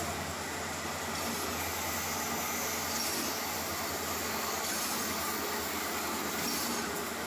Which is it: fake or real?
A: real